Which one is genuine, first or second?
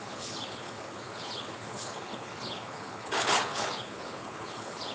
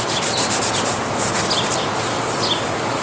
second